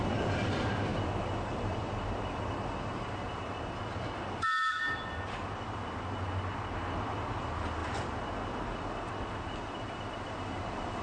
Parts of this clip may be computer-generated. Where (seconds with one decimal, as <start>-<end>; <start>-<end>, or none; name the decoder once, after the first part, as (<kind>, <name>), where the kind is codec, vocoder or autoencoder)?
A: none